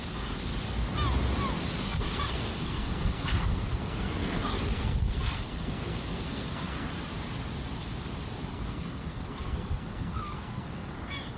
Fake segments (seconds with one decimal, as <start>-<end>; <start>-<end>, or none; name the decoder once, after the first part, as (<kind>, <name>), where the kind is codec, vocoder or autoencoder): 0.0-0.5 (codec, SNAC); 1.8-6.9; 8.5-11.4